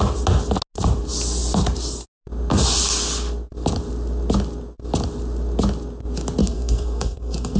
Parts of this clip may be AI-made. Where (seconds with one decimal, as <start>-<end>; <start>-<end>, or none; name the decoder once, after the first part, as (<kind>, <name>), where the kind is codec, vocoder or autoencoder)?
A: 6.4-7.6 (codec, SNAC)

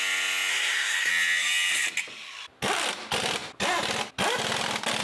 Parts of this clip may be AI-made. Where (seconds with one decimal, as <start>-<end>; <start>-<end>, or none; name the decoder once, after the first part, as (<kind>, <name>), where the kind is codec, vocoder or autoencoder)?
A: 0.5-1.1 (codec, SNAC)

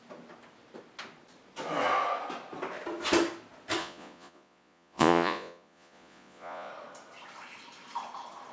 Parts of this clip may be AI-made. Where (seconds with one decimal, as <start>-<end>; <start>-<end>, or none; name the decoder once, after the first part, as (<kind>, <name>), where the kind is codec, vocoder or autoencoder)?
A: 3.8-6.7 (vocoder, Vocos)

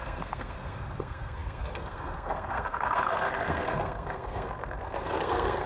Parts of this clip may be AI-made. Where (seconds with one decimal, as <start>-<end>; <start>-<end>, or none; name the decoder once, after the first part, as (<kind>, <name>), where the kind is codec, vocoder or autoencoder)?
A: 0.0-5.7 (codec, SNAC)